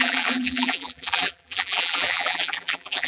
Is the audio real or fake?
fake